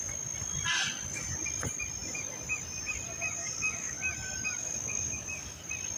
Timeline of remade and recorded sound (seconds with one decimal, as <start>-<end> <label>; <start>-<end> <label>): 0.0-3.4 recorded; 3.4-4.0 remade; 4.0-4.6 recorded; 4.6-5.6 remade; 5.6-6.0 recorded